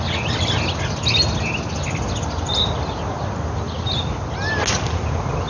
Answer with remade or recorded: recorded